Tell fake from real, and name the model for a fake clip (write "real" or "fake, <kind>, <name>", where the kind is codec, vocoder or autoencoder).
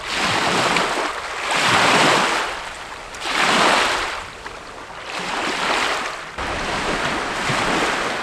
real